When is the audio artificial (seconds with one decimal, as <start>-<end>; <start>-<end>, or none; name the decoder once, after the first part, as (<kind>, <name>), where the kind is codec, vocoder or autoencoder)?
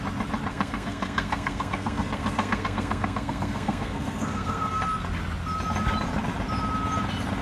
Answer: 0.5-4.8 (codec, SNAC)